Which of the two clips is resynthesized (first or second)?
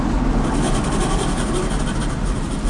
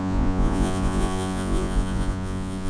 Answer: second